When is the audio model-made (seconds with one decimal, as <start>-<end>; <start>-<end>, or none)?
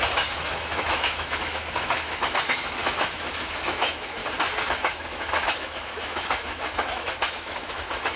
0.0-4.2; 4.7-8.2